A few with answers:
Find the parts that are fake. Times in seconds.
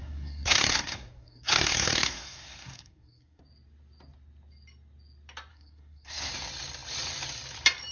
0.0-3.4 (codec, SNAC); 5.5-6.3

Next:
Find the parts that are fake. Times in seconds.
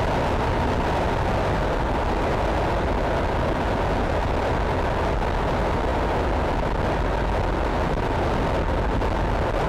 none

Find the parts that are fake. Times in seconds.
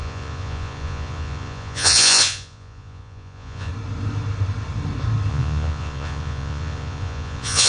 0.0-3.7 (vocoder, Vocos); 5.3-7.7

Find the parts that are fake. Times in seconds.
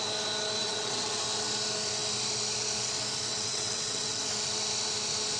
0.6-1.1 (vocoder, WaveNeXt); 3.3-4.2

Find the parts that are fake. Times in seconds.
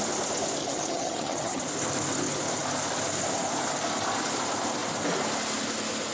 0.6-1.6 (vocoder, HiFi-GAN)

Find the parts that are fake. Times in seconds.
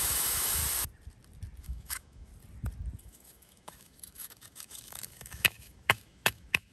0.0-0.6 (autoencoder, DAC-VAE); 1.6-2.3; 3.0-6.7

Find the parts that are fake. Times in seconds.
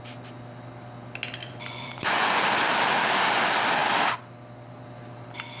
1.4-2.4 (vocoder, Vocos)